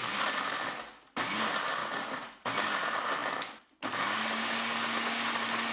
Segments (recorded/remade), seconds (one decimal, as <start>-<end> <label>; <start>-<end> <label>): 0.0-1.8 recorded; 1.8-2.5 remade; 2.5-5.7 recorded